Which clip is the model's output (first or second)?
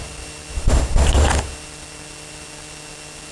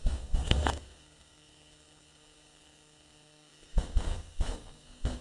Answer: second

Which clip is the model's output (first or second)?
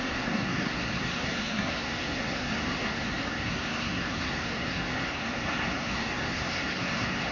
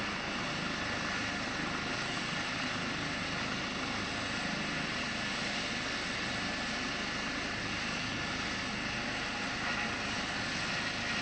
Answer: first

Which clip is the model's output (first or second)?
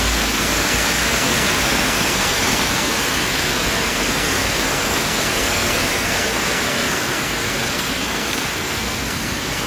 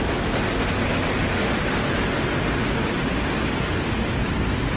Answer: first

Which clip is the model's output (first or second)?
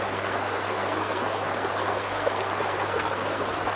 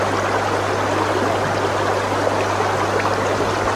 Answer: first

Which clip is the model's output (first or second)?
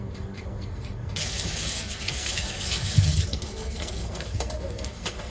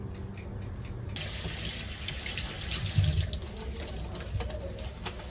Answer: first